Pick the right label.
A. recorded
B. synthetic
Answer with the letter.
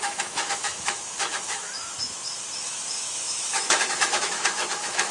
B